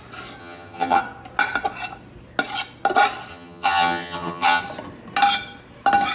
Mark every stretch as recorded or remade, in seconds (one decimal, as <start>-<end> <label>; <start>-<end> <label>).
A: 0.0-0.4 recorded; 0.4-1.0 remade; 1.0-3.3 recorded; 3.3-4.6 remade; 4.6-6.1 recorded